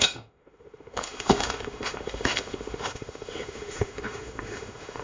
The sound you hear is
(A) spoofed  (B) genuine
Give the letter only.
A